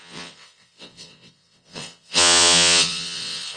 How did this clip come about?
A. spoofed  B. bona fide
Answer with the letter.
A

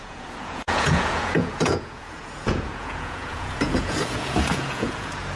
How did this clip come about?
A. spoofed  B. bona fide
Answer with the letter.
A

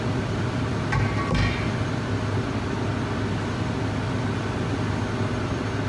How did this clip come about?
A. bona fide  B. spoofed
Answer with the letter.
A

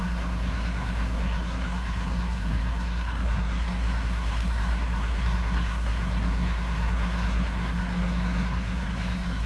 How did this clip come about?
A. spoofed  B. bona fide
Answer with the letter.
A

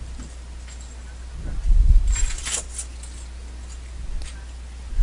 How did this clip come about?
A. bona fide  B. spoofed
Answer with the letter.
A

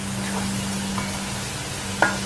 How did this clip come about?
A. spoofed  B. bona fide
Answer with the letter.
B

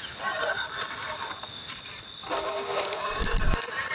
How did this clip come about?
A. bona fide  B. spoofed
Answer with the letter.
A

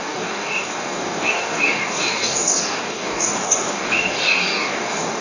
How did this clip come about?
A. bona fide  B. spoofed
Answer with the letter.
B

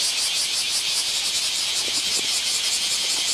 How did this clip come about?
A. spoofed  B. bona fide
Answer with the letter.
B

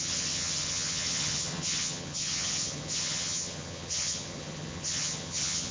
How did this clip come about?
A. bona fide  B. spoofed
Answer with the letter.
B